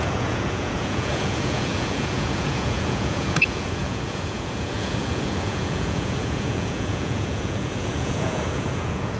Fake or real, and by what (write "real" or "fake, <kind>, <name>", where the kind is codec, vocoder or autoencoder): fake, vocoder, Vocos